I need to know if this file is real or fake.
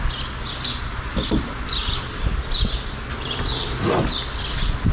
real